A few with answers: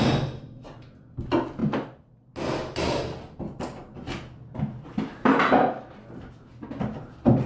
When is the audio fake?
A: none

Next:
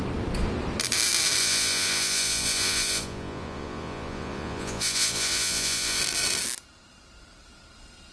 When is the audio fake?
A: 1.4-6.0 (vocoder, Vocos)

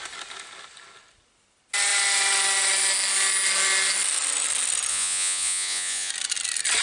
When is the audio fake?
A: 4.9-6.1 (vocoder, Vocos)

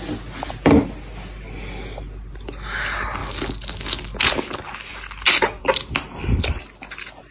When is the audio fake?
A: none

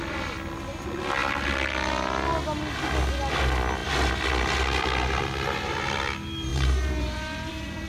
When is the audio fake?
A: 6.5-7.5 (vocoder, BigVGAN v2)